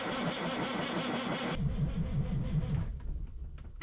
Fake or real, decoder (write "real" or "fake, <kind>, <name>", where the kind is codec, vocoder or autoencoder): real